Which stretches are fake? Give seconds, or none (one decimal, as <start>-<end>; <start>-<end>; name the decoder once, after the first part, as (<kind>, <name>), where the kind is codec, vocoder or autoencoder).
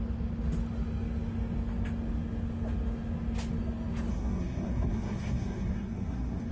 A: 4.1-6.5 (codec, SNAC)